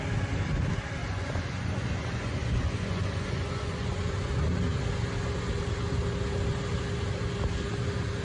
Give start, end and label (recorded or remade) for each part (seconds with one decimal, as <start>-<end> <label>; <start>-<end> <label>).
0.0-1.0 recorded; 1.0-4.3 remade; 4.3-8.2 recorded